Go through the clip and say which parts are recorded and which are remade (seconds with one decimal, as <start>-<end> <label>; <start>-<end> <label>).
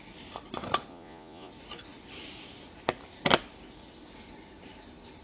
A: 0.0-0.9 recorded; 0.9-1.5 remade; 1.5-5.2 recorded